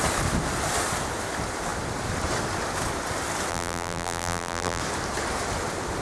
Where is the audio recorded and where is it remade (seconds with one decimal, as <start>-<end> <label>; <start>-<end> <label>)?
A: 0.0-3.5 recorded; 3.5-4.8 remade; 4.8-6.0 recorded